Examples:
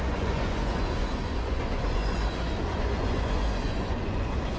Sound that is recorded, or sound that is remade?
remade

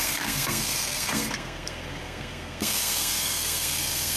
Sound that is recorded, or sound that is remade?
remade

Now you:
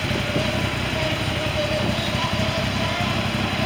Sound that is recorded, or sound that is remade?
recorded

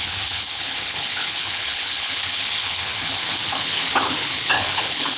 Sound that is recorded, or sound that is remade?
remade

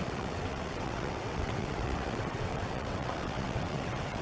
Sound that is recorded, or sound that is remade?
remade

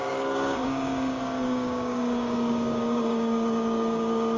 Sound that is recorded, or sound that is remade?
remade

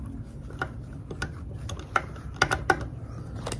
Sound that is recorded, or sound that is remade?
recorded